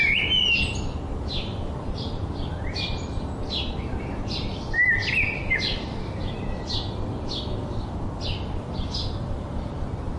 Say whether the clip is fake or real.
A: real